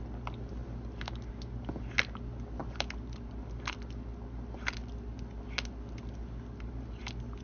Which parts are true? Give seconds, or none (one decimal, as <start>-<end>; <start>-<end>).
0.0-7.4